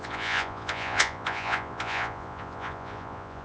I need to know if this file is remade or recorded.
remade